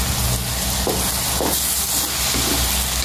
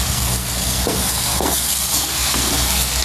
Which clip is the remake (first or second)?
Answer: second